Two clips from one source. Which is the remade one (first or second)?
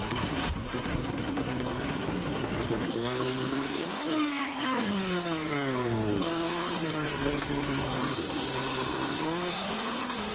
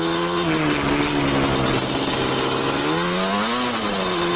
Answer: first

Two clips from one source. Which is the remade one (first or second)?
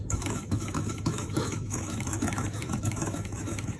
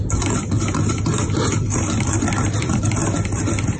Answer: first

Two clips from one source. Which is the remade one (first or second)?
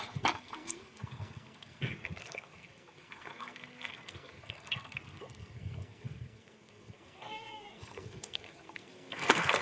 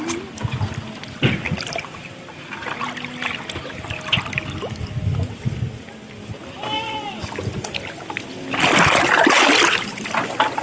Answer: first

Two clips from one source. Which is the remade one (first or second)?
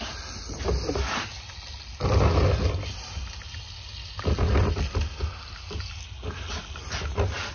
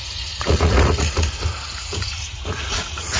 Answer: second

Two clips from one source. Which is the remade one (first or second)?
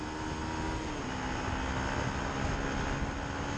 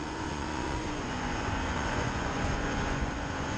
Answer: second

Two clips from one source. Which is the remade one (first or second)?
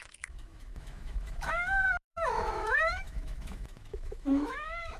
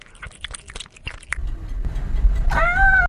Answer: first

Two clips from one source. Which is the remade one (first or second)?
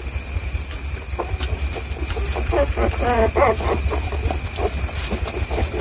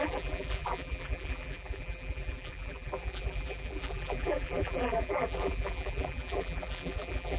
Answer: second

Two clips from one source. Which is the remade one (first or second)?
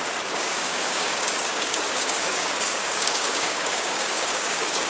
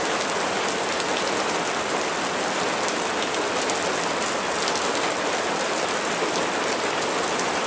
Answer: first